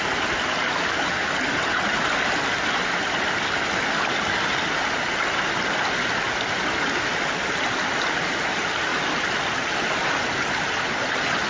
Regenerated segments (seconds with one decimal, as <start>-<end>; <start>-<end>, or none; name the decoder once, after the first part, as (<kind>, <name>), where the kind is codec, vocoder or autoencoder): none